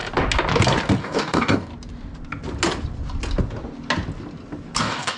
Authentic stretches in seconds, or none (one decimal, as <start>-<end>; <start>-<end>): 0.0-1.0; 1.7-4.8